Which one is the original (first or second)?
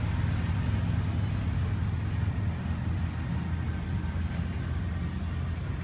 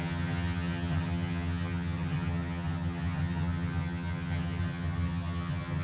first